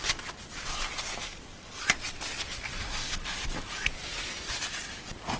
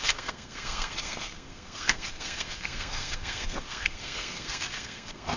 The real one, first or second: first